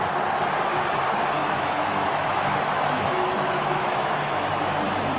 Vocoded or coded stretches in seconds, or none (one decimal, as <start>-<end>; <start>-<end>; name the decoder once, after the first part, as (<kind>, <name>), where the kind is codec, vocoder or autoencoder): 1.4-4.5 (autoencoder, DAC-VAE)